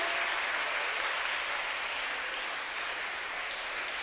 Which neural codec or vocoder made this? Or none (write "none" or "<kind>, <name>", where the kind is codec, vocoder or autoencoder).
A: none